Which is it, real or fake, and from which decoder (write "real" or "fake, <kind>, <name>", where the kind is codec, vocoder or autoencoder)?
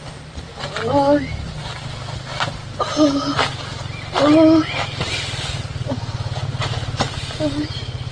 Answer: real